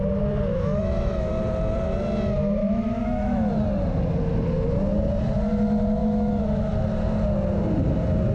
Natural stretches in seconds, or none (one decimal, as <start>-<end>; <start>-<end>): 0.0-0.5; 1.3-2.6; 3.5-6.0; 6.7-8.3